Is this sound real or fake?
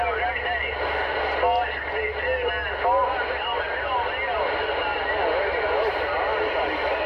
real